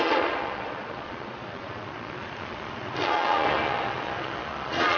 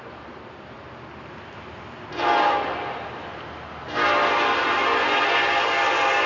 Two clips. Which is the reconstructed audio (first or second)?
first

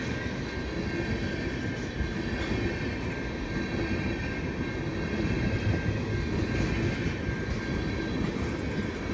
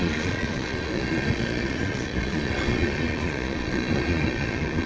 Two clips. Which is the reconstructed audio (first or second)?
second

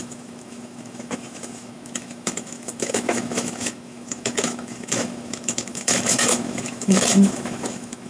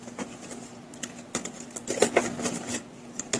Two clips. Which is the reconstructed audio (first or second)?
first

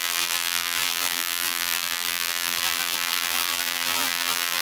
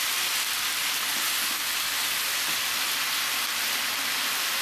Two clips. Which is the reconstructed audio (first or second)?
first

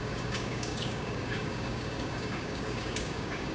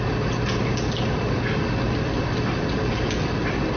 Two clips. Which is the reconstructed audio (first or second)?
first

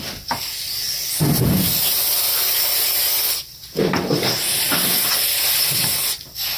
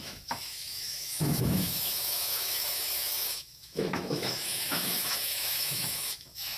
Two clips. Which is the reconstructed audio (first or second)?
second